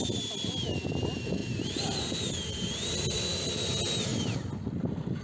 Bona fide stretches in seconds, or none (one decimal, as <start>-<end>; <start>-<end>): 0.0-5.2